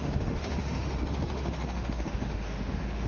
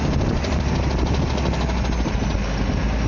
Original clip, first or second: second